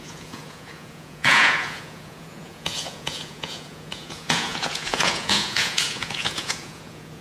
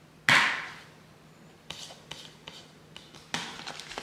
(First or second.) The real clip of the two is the second